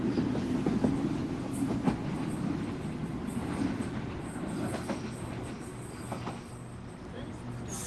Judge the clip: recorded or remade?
recorded